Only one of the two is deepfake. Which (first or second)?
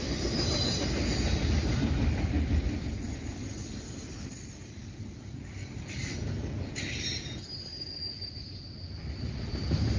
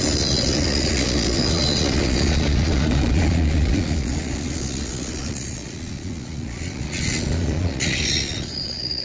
second